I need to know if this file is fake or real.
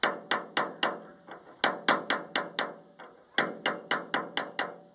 real